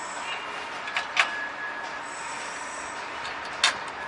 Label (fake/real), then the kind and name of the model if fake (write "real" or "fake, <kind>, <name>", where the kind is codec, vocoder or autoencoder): real